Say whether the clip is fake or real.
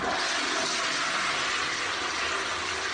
real